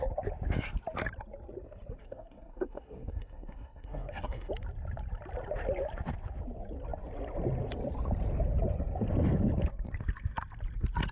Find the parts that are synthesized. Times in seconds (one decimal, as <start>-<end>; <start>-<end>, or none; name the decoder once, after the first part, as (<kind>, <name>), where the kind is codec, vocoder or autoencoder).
2.0-4.5 (codec, SNAC)